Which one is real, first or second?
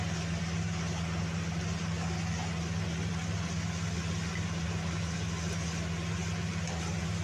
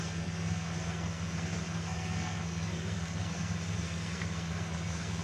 first